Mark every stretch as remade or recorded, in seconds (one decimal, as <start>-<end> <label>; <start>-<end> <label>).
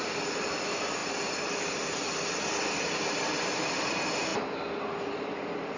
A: 0.0-5.8 recorded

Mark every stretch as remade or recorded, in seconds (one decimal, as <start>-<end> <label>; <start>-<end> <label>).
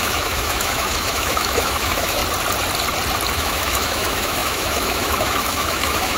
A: 0.0-2.2 remade; 2.2-3.3 recorded; 3.3-6.2 remade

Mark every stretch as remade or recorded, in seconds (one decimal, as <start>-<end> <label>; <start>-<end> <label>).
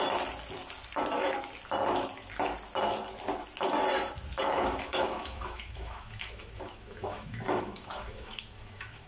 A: 0.0-4.4 recorded; 4.4-9.1 remade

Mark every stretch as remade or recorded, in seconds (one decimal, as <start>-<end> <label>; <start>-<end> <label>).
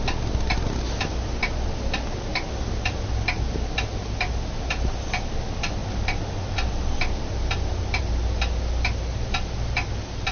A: 0.0-10.3 recorded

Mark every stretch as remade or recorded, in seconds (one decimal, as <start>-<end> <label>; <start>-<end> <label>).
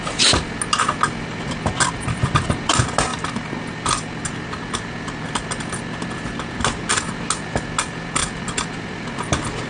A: 0.0-9.7 recorded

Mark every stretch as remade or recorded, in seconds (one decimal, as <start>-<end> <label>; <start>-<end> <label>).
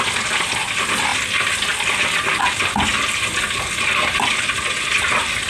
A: 0.0-5.5 recorded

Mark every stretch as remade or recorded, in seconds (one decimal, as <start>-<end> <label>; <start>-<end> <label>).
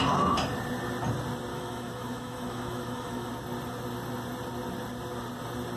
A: 0.0-1.5 recorded; 1.5-3.3 remade; 3.3-5.8 recorded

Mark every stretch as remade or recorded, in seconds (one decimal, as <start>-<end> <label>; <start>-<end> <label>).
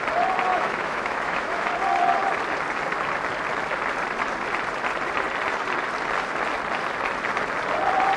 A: 0.0-0.5 recorded; 0.5-1.7 remade; 1.7-8.2 recorded